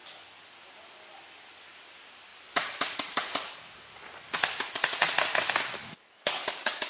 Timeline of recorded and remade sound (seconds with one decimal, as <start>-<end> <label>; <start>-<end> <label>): 0.0-5.8 recorded; 5.8-6.9 remade